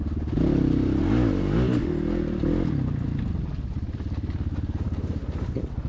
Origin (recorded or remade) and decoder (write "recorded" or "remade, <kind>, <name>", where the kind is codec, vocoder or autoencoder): recorded